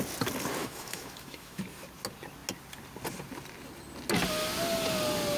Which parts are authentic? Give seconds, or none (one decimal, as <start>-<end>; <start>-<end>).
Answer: 0.0-0.6; 1.6-5.4